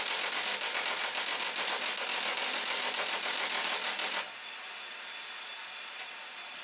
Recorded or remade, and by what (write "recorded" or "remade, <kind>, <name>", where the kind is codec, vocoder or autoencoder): recorded